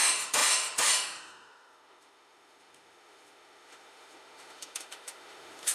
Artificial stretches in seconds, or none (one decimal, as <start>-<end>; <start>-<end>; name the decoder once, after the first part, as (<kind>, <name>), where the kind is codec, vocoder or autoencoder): 0.0-5.7 (autoencoder, DAC-VAE)